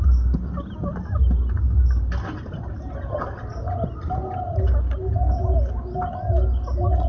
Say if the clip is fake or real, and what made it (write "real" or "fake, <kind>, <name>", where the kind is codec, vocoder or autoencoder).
real